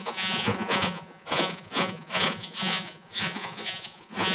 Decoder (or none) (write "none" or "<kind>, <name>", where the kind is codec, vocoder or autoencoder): vocoder, Vocos